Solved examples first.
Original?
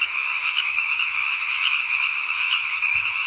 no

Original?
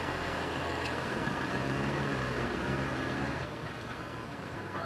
no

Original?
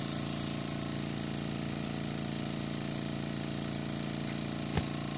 yes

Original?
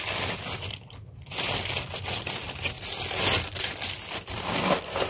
yes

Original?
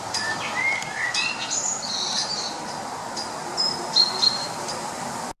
yes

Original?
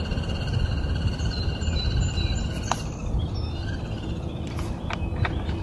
yes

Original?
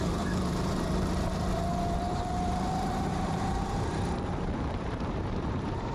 no